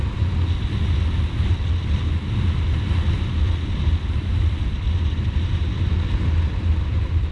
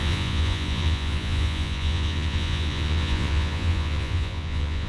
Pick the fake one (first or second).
second